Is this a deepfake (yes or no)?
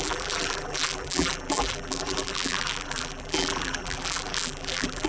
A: yes